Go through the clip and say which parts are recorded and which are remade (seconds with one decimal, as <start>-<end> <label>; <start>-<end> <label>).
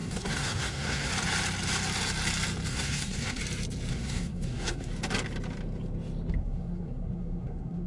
0.0-1.1 remade; 1.1-2.7 recorded; 2.7-3.4 remade; 3.4-3.9 recorded; 3.9-4.9 remade; 4.9-6.4 recorded; 6.4-7.9 remade